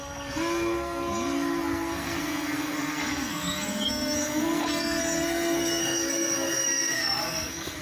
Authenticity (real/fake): fake